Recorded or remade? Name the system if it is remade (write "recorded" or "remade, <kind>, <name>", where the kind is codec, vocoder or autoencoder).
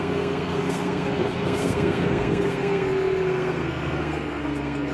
remade, codec, SNAC